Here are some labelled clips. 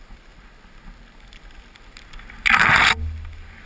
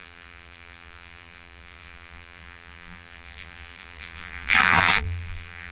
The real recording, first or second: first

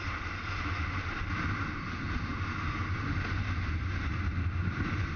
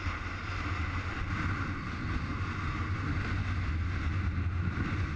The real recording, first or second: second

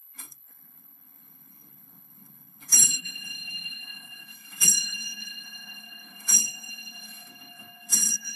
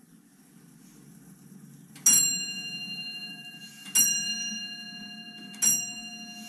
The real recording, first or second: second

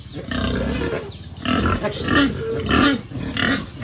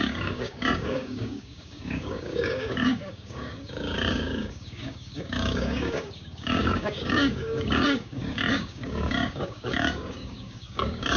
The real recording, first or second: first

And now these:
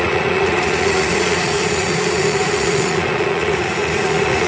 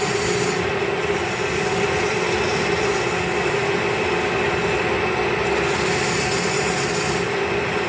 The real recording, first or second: second